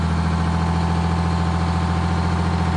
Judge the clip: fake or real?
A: real